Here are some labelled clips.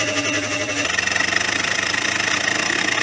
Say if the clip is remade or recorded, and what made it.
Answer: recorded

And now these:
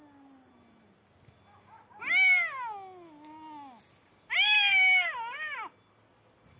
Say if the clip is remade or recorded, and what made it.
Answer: recorded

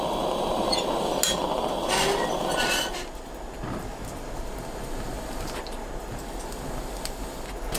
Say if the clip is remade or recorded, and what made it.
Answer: recorded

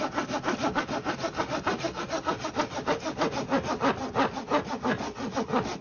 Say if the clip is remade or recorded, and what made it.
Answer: recorded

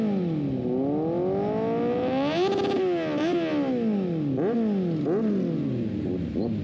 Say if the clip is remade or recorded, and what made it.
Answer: recorded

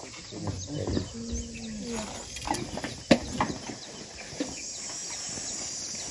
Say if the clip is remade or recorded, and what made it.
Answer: recorded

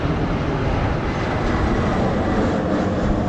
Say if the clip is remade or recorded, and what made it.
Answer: remade, vocoder, BigVGAN v2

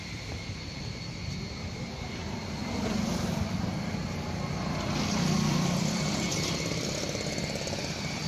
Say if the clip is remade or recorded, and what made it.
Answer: remade, vocoder, BigVGAN v2